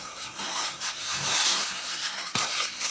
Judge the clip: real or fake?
fake